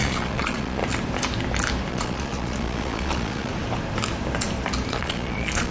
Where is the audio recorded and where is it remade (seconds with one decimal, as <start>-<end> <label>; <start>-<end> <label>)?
0.0-0.8 remade; 0.8-1.9 recorded; 1.9-3.5 remade; 3.5-4.9 recorded; 4.9-5.7 remade